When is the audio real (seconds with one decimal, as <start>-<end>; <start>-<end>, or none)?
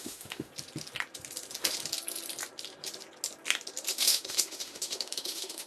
0.5-3.9